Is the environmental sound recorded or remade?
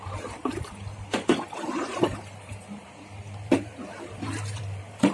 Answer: remade